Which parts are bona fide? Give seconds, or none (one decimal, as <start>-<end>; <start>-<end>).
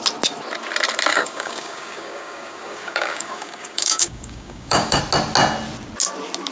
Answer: 0.0-1.1; 5.0-6.5